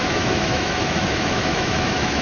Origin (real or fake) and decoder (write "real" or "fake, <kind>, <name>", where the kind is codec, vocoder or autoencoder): fake, autoencoder, DAC-VAE